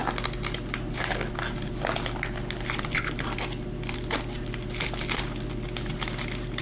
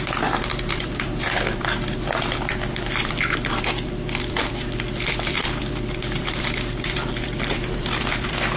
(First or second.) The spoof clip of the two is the second